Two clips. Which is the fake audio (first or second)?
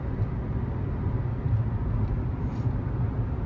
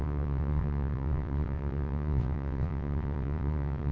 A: second